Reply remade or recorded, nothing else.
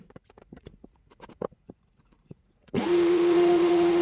remade